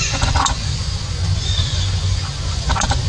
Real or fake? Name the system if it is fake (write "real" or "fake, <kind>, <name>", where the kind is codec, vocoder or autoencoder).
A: fake, vocoder, Vocos